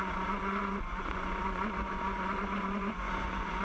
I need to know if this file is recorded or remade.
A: remade